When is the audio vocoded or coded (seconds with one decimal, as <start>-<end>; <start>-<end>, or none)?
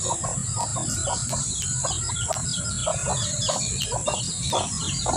0.0-5.2